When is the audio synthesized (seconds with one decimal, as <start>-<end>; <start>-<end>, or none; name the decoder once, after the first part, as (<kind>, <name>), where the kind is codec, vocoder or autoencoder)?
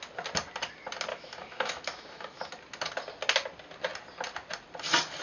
1.1-2.5 (autoencoder, DAC-VAE)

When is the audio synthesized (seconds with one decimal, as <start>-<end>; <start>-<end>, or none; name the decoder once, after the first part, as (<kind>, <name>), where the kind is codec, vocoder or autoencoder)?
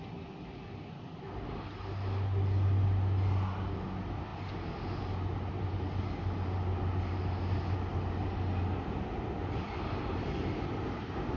none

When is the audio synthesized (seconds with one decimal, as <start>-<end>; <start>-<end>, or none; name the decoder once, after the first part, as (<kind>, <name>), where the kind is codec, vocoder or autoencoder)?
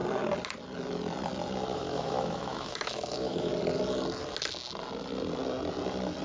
1.7-3.5 (autoencoder, DAC-VAE)